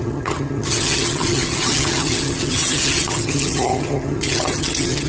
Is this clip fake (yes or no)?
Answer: yes